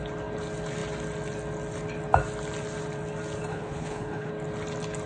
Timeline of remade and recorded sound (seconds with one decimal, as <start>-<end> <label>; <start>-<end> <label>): 0.0-3.5 recorded; 3.5-4.3 remade; 4.3-5.1 recorded